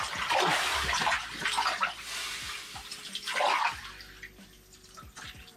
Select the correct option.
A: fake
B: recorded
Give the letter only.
B